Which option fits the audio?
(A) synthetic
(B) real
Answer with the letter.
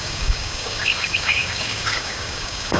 A